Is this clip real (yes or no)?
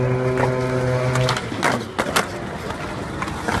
yes